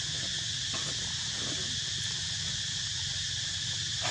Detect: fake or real real